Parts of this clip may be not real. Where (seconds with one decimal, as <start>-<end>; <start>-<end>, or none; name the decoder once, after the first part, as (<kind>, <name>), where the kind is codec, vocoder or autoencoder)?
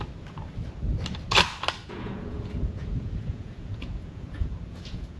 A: 1.8-5.2 (vocoder, Vocos)